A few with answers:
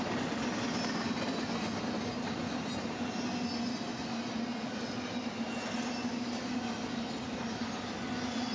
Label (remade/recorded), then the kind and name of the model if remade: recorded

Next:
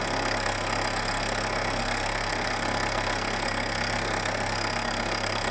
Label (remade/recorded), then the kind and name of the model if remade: remade, codec, SNAC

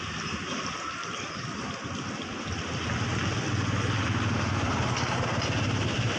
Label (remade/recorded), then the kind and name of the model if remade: recorded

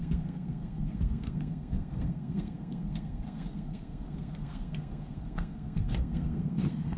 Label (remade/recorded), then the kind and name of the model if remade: remade, codec, SNAC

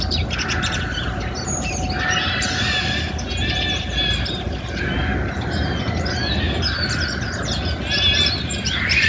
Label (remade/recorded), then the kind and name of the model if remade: recorded